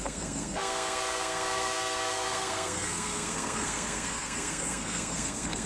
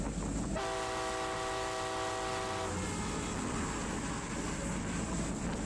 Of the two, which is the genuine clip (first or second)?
second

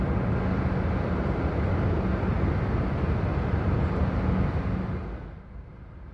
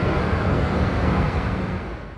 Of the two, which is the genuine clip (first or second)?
first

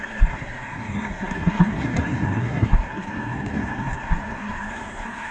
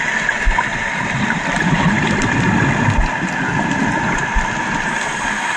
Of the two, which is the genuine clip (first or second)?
second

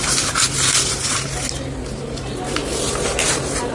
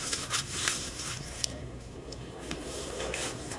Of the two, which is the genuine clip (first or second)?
first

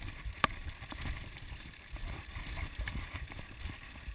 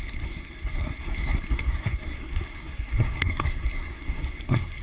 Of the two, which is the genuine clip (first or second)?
first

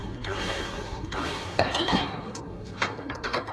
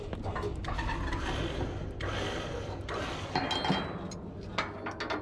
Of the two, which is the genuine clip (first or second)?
second